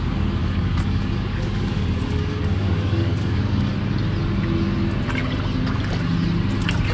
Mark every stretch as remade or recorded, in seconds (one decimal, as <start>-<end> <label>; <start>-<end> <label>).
0.0-0.4 recorded; 0.4-3.7 remade; 3.7-6.9 recorded